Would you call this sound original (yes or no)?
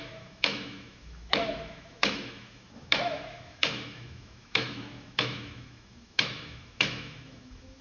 no